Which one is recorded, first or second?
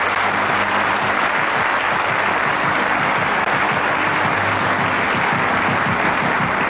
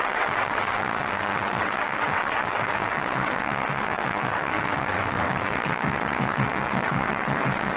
first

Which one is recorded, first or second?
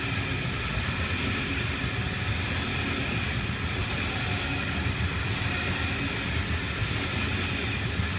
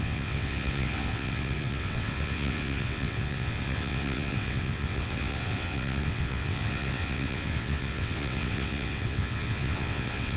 first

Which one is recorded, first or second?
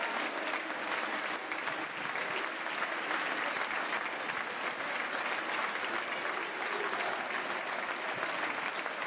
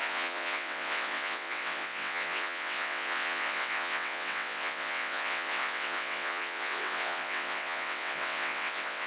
first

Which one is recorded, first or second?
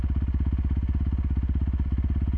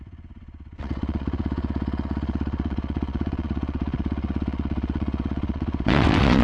first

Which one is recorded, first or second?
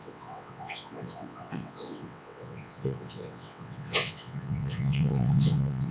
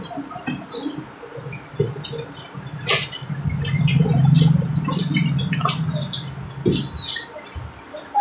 second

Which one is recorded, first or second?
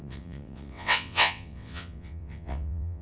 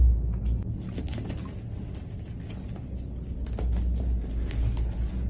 second